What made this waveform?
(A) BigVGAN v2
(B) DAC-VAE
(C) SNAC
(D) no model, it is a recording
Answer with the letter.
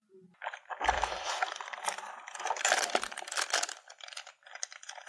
A